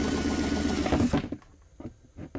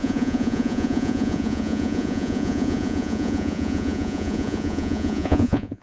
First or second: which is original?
first